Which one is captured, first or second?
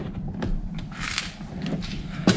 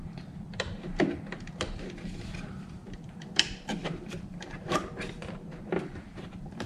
first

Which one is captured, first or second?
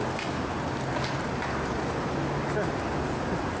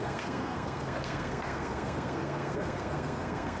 first